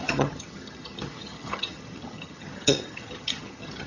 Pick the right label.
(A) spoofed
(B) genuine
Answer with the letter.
A